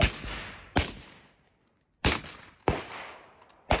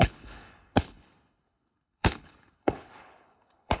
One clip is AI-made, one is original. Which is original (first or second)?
first